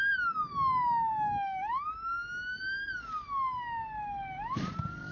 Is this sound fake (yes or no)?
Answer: no